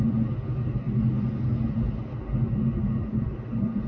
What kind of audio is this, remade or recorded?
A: recorded